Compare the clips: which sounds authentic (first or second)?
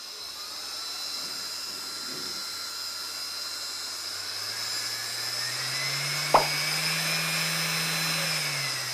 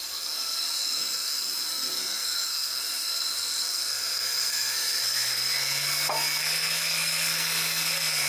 first